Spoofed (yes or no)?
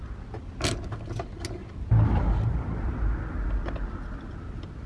no